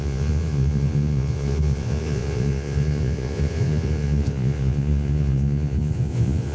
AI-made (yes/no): yes